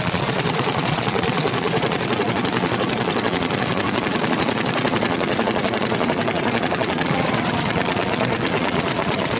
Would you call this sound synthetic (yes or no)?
yes